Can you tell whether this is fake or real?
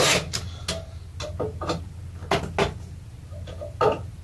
real